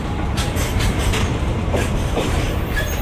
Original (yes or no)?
no